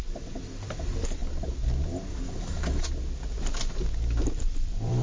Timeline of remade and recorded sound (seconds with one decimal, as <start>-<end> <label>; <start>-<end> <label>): 0.0-1.2 remade; 1.2-4.2 recorded; 4.2-5.0 remade